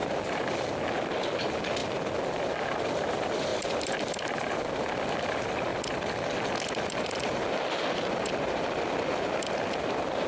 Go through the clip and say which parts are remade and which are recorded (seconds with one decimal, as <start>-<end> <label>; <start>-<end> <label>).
0.0-3.5 recorded; 3.5-4.6 remade; 4.6-5.7 recorded; 5.7-9.8 remade; 9.8-10.3 recorded